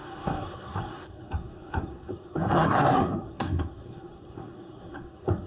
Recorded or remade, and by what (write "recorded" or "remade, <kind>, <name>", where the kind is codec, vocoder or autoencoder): remade, codec, SNAC